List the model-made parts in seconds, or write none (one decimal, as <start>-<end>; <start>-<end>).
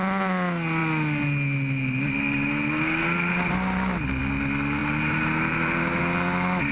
4.8-6.0